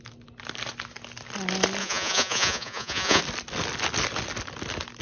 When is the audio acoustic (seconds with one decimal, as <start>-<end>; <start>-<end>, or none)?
0.0-1.8; 3.2-5.0